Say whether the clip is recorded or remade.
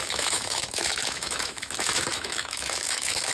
remade